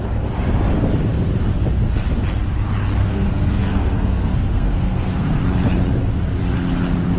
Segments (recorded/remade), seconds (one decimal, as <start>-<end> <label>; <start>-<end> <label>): 0.0-3.0 recorded; 3.0-5.4 remade; 5.4-7.2 recorded